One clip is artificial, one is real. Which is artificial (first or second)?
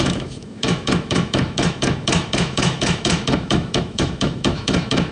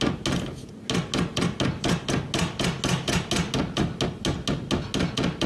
first